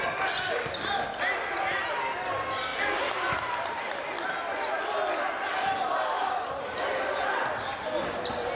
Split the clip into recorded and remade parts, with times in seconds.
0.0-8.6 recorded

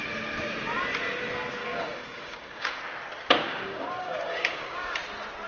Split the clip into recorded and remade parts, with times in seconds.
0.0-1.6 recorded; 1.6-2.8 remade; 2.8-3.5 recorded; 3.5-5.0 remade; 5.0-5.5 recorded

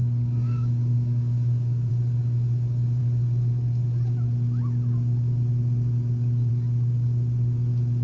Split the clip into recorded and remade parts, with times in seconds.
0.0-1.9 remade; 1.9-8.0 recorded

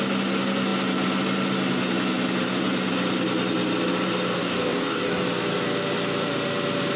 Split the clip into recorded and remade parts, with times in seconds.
0.0-4.4 recorded; 4.4-5.2 remade; 5.2-7.0 recorded